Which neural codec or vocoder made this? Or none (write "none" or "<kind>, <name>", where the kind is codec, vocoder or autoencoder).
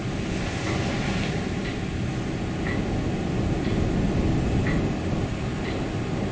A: none